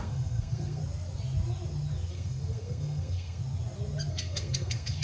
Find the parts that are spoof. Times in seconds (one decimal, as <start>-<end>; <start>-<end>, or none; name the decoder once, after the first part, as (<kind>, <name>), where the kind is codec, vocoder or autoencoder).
0.0-0.8 (codec, SNAC); 2.1-3.4; 4.1-5.0